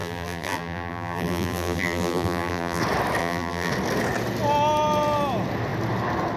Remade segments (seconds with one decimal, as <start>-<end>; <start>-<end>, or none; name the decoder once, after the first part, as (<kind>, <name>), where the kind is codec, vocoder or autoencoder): 0.0-2.8 (vocoder, BigVGAN v2); 3.2-3.7